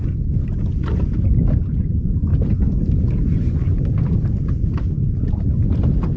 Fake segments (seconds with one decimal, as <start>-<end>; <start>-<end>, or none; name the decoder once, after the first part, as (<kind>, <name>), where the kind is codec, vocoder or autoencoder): none